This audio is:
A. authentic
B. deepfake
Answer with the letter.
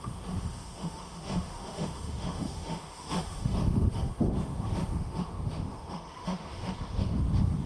B